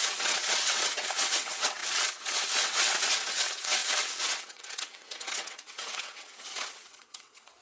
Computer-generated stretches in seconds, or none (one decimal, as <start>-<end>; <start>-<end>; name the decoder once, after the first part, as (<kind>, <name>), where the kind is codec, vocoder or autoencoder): 0.0-7.6 (vocoder, WaveNeXt)